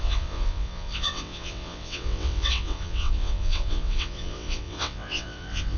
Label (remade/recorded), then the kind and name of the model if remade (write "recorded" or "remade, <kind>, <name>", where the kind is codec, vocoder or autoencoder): remade, vocoder, WaveNeXt